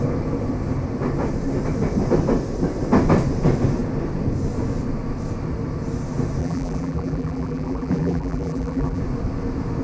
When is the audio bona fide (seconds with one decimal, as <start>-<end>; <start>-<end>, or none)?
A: 0.0-6.4; 9.0-9.8